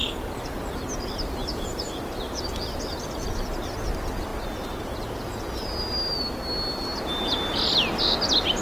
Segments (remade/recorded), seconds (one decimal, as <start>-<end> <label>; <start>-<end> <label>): 0.0-1.4 recorded; 1.4-2.0 remade; 2.0-8.6 recorded